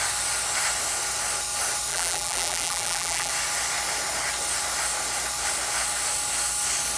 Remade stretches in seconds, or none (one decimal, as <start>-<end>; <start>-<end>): 1.9-3.3